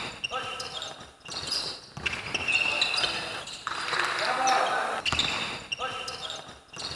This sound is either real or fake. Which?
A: real